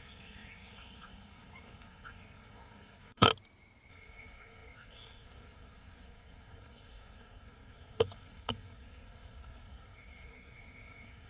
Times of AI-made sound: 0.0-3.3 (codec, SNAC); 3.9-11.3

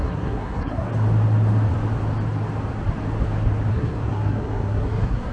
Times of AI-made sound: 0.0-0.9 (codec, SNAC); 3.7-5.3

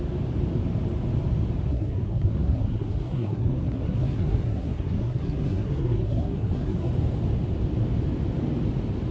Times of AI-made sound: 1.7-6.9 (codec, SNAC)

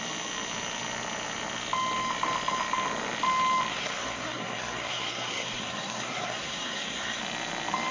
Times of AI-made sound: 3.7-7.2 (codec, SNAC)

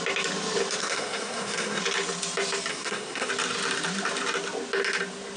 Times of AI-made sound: 0.8-1.8 (codec, SNAC); 2.7-3.3

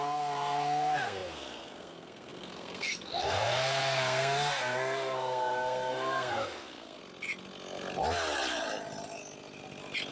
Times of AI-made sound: 0.0-7.0 (codec, SNAC)